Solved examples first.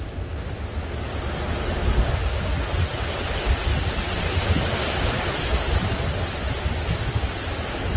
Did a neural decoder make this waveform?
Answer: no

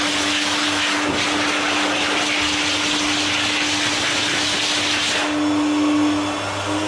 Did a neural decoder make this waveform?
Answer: no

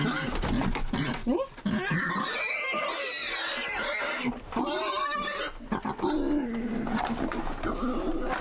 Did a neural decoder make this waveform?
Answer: no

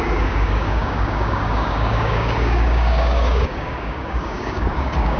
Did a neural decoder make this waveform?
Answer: yes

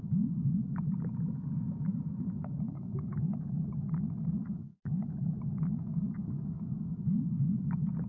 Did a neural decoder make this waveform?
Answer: yes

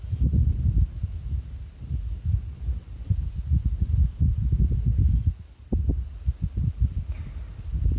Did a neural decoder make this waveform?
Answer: no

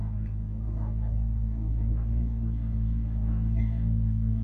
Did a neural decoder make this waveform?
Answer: yes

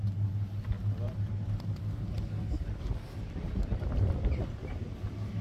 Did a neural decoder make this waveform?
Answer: no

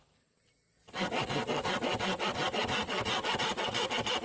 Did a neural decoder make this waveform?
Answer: no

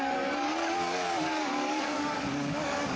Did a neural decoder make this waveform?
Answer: yes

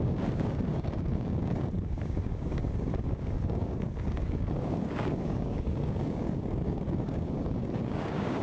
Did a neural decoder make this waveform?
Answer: yes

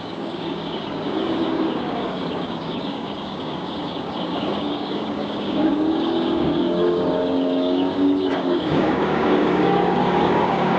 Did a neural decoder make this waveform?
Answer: yes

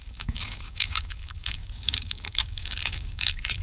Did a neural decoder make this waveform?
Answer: yes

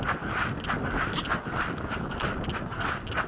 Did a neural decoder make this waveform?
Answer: no